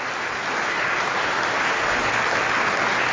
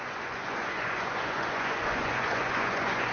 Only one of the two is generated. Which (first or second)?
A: second